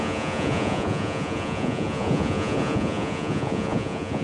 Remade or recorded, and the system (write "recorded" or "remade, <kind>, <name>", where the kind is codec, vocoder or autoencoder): remade, vocoder, Vocos